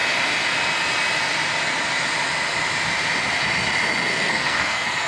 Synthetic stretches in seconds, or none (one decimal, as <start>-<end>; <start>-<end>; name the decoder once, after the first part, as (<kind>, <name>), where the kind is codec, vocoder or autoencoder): 4.1-5.1 (codec, SNAC)